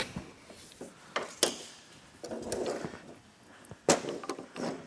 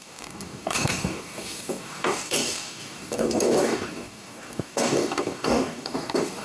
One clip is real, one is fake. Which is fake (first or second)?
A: second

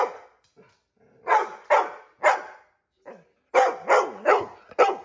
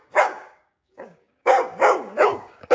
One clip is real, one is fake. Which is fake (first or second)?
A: second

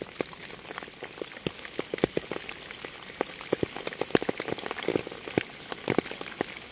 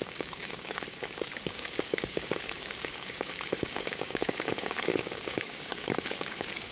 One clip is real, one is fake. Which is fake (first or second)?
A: second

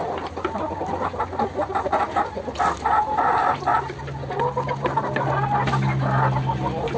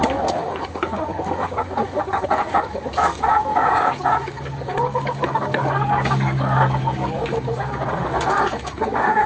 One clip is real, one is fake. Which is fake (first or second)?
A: second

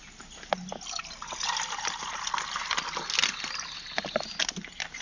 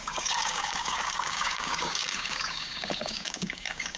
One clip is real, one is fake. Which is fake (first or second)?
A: second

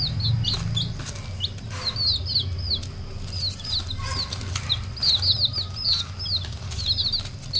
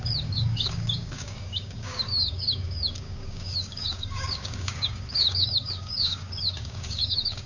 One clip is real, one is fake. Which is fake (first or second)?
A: second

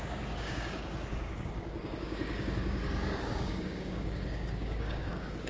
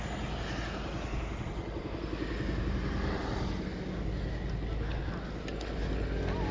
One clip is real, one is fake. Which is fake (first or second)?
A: first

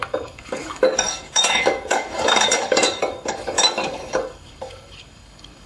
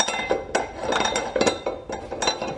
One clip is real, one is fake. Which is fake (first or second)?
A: first